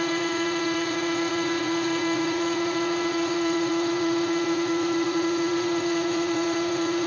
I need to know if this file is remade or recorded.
remade